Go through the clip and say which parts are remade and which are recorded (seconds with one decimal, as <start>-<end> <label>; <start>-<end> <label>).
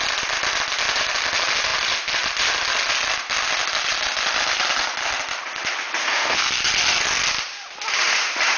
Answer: 0.0-6.0 recorded; 6.0-6.5 remade; 6.5-8.6 recorded